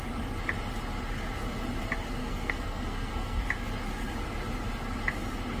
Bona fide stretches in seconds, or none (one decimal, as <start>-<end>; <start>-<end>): 0.0-2.2; 3.4-5.6